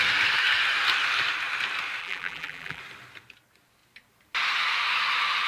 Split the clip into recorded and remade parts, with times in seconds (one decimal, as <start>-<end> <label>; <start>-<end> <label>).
0.0-2.0 recorded; 2.0-2.8 remade; 2.8-5.5 recorded